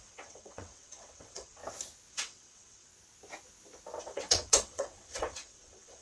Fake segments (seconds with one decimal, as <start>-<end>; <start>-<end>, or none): 0.0-1.6; 2.1-2.9; 4.0-6.0